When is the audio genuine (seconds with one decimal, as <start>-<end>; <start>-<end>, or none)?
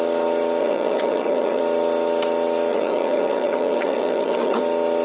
0.0-0.6; 1.6-2.7; 4.6-5.0